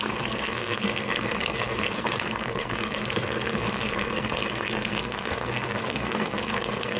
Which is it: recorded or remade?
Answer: remade